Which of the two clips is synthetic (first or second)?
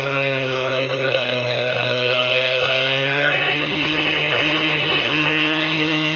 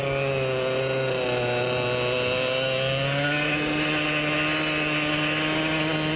first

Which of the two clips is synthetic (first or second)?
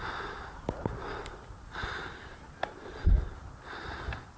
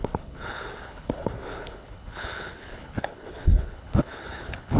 second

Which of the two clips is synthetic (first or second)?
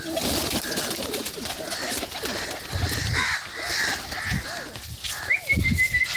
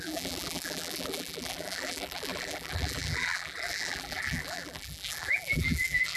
second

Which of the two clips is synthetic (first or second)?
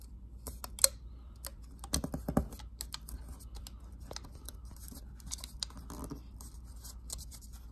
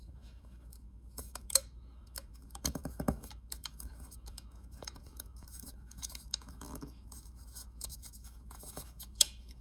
second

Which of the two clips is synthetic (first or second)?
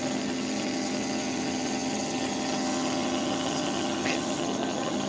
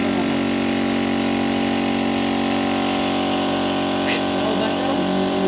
first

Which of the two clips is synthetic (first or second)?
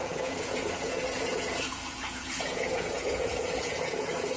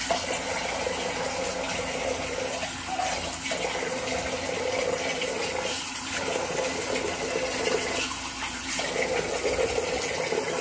first